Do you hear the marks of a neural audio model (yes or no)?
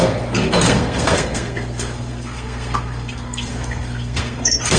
yes